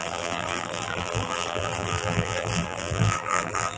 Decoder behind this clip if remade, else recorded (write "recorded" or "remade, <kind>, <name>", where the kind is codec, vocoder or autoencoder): remade, vocoder, BigVGAN v2